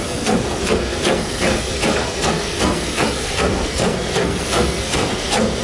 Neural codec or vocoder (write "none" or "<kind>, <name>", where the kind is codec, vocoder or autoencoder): codec, SNAC